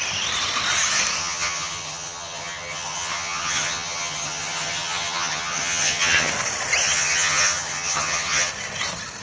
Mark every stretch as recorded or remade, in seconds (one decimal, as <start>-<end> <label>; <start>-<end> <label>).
0.0-1.2 recorded; 1.2-6.3 remade; 6.3-6.8 recorded; 6.8-8.5 remade; 8.5-9.2 recorded

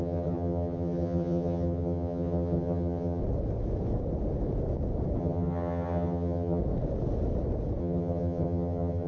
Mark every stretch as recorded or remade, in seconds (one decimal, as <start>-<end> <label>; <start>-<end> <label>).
0.0-3.2 remade; 3.2-5.2 recorded; 5.2-6.6 remade; 6.6-7.8 recorded; 7.8-9.1 remade

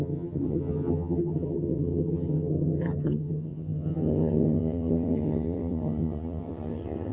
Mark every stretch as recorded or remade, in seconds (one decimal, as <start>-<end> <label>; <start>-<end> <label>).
0.0-7.1 remade

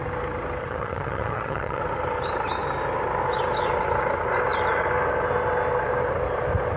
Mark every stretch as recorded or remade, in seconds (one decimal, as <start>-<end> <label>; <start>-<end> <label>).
0.0-0.6 recorded; 0.6-1.8 remade; 1.8-6.8 recorded